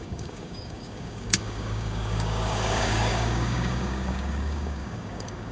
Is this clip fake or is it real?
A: fake